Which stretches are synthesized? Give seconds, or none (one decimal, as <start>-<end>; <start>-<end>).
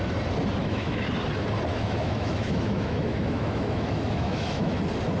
0.6-1.1; 1.7-4.8